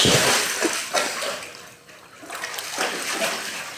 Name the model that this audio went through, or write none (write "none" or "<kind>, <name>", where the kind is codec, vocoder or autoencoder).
none